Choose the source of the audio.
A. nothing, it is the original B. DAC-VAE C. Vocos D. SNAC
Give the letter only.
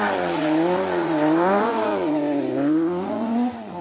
C